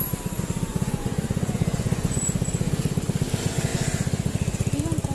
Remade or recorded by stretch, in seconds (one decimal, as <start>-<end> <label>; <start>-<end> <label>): 0.0-0.7 recorded; 0.7-2.2 remade; 2.2-5.1 recorded